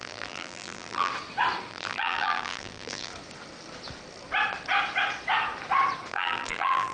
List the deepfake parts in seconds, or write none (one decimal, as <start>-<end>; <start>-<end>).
0.0-1.1; 1.7-3.1; 6.1-6.9